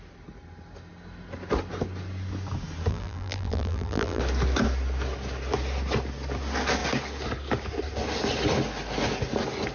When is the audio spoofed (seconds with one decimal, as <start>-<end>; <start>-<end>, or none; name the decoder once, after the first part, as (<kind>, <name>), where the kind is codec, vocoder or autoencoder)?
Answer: 2.9-4.2 (vocoder, BigVGAN v2)